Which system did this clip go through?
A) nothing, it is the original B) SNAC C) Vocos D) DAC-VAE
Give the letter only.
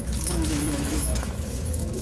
D